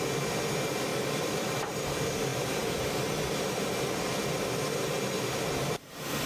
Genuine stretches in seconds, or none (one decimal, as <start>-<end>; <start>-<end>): 0.0-0.9; 1.9-2.3